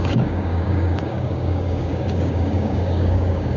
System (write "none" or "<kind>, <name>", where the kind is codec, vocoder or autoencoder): codec, DAC